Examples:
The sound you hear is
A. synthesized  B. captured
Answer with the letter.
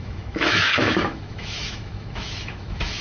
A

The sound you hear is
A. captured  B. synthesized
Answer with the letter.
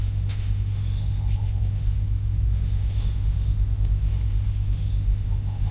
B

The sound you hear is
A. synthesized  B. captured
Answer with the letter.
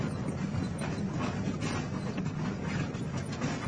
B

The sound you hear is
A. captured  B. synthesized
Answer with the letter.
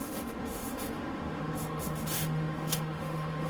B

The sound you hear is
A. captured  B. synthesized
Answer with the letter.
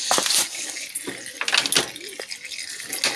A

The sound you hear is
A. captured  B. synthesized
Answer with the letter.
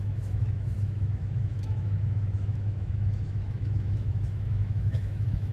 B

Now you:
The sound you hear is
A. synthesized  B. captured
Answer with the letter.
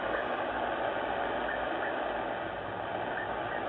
B